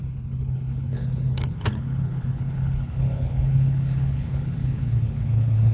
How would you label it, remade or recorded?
remade